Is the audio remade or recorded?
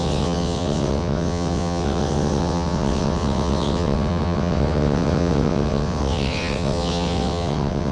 remade